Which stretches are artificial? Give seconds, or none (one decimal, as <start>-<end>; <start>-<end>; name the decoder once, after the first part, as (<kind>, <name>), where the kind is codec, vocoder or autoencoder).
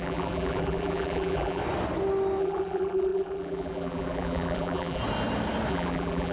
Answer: 0.0-1.6 (vocoder, BigVGAN v2); 2.4-5.0; 5.7-6.3